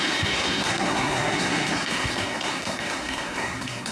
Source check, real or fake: fake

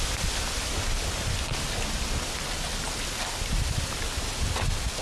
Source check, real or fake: real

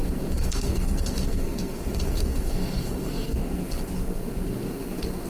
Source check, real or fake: fake